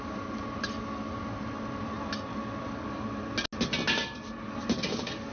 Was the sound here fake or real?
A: real